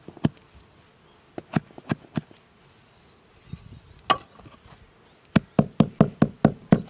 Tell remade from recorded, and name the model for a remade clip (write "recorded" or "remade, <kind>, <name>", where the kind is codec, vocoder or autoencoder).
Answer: recorded